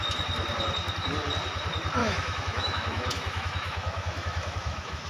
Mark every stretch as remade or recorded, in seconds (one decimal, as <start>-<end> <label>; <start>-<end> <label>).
0.0-2.0 recorded; 2.0-5.1 remade